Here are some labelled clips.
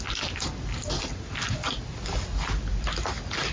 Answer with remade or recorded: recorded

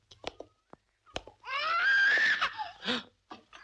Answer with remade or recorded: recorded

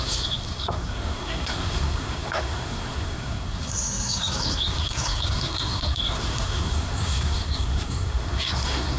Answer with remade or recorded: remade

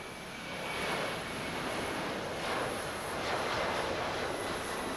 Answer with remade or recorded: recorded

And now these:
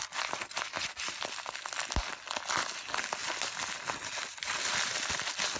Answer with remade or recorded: recorded